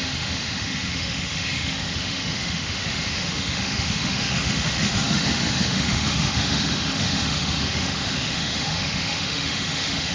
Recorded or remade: remade